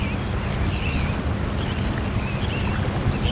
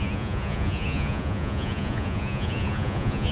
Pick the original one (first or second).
first